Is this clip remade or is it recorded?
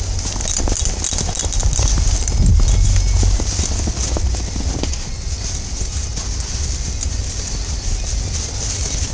recorded